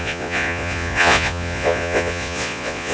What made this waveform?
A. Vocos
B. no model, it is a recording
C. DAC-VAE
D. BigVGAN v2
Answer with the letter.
A